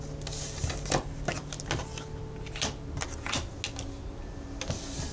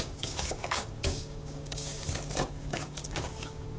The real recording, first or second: first